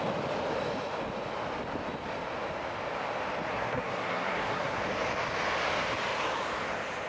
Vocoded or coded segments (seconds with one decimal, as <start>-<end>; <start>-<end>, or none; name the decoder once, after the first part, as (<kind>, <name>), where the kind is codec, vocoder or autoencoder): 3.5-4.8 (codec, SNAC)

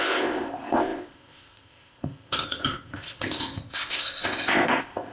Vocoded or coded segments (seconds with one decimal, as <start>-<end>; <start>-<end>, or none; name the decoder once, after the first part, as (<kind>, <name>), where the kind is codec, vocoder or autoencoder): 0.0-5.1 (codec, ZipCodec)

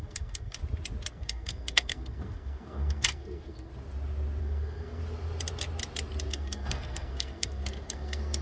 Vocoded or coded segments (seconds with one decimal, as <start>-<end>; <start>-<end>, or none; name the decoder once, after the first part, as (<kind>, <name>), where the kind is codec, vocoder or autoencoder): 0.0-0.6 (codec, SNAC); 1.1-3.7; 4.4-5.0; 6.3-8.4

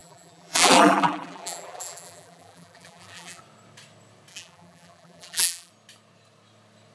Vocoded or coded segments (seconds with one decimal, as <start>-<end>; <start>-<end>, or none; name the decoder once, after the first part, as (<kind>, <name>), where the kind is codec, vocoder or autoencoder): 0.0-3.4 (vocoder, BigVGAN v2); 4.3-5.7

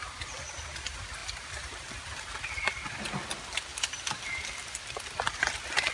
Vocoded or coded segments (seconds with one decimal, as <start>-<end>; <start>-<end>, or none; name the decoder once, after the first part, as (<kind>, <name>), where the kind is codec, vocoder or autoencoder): none